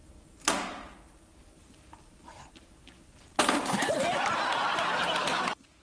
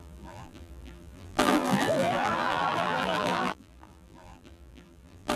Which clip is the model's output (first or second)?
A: second